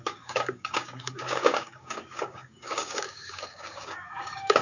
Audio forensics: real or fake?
fake